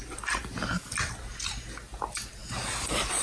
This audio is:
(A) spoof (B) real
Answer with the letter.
B